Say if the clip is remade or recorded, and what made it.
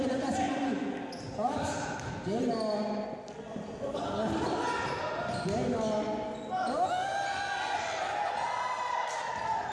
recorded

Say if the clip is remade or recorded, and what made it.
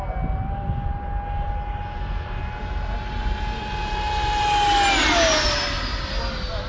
recorded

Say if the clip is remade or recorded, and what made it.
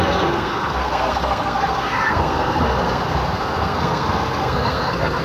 remade, codec, SNAC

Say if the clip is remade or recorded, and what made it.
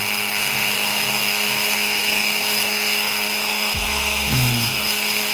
remade, codec, SNAC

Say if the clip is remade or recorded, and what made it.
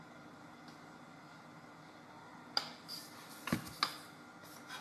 recorded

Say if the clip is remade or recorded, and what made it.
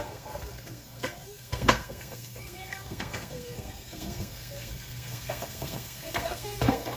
remade, codec, SNAC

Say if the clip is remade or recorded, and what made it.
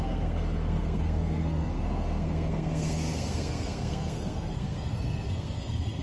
remade, codec, SNAC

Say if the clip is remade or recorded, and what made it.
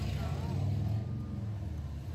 recorded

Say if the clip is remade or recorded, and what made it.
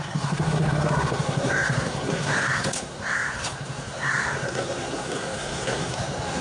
remade, codec, SNAC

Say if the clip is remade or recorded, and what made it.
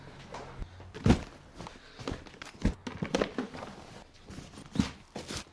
recorded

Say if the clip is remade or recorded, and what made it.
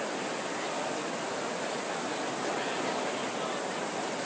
recorded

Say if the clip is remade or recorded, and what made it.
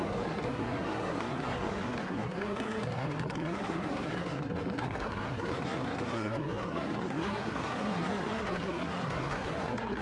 remade, codec, SNAC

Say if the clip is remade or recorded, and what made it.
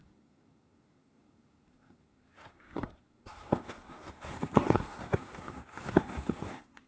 remade, codec, SNAC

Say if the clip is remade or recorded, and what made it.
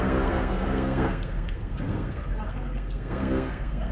remade, codec, SNAC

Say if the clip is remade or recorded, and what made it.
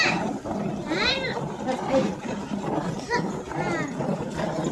recorded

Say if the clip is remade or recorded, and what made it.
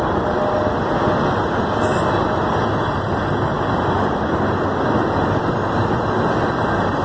recorded